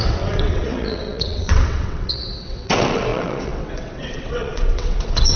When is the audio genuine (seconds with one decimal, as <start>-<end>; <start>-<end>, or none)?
none